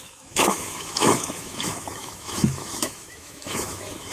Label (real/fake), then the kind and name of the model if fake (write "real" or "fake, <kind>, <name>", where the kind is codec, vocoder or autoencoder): fake, autoencoder, DAC-VAE